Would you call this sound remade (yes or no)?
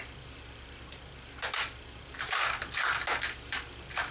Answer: no